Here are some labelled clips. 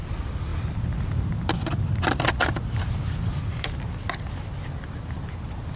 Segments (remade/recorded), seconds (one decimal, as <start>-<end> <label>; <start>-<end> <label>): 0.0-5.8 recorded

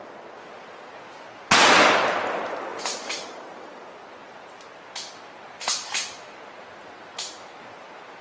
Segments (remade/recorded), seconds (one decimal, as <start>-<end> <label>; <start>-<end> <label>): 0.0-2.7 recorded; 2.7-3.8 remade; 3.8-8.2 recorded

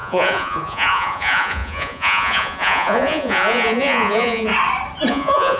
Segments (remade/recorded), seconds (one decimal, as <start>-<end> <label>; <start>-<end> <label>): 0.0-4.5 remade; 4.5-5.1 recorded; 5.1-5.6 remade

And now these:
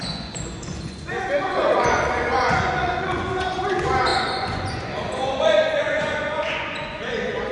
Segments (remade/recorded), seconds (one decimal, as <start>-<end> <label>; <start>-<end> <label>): 0.0-7.5 remade

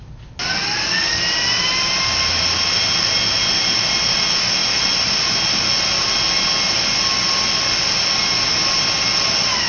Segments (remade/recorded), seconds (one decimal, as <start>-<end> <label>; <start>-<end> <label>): 0.0-0.6 recorded; 0.6-1.2 remade; 1.2-9.7 recorded